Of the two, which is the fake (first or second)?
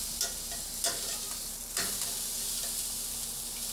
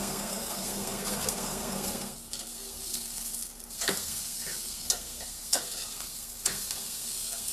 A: second